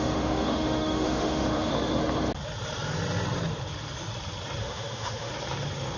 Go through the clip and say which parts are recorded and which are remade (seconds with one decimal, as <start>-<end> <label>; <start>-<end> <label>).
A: 0.0-1.7 remade; 1.7-4.6 recorded; 4.6-5.3 remade; 5.3-6.0 recorded